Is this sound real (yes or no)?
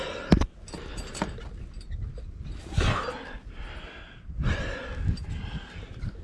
yes